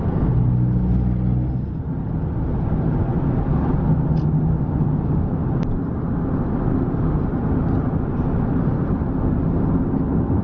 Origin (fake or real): real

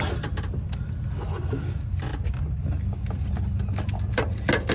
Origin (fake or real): real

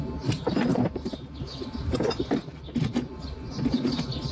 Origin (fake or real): real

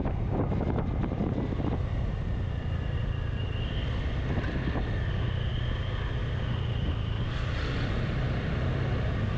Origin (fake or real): real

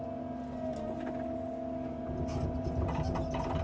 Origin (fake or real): real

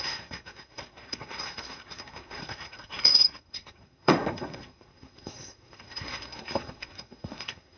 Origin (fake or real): fake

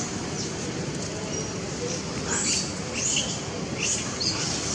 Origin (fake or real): real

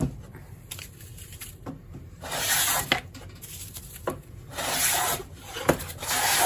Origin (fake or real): fake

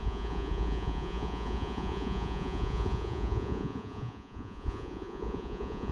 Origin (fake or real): fake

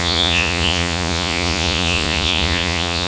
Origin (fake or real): fake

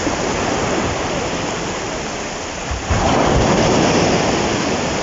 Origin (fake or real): real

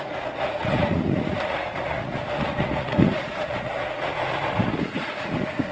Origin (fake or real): fake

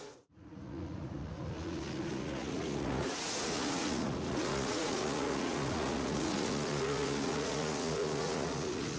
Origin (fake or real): fake